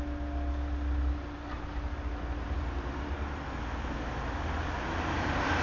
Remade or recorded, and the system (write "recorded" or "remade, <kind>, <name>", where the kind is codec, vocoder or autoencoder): recorded